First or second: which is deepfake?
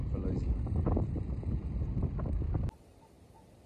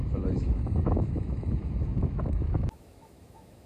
second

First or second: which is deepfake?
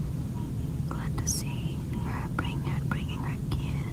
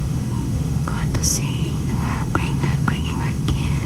second